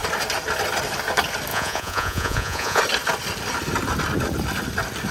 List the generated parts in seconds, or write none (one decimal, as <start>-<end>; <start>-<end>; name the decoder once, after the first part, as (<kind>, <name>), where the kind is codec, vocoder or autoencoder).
1.5-2.8 (vocoder, Vocos)